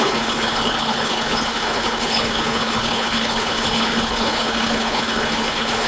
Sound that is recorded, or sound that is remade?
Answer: remade